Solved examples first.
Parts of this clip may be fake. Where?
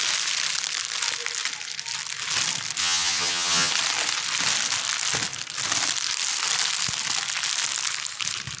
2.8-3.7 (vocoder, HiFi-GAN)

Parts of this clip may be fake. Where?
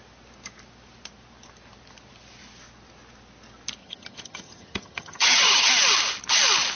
3.8-5.7 (vocoder, HiFi-GAN)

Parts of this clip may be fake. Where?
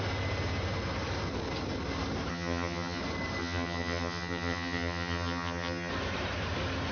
2.3-3.0 (vocoder, HiFi-GAN); 3.4-5.9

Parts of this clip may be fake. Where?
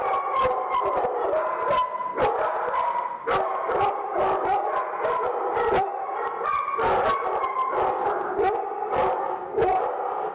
none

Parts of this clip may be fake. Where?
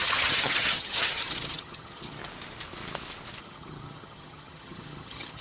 0.0-2.2 (vocoder, HiFi-GAN); 3.4-5.4